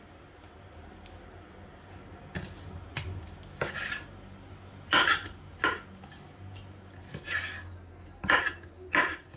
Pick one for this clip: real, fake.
real